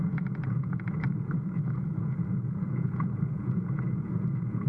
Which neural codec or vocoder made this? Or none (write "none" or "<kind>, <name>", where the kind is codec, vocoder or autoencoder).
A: vocoder, Vocos